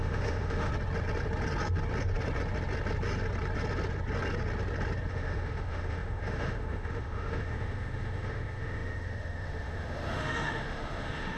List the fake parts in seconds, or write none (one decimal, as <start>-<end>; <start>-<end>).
0.0-0.7; 5.1-11.4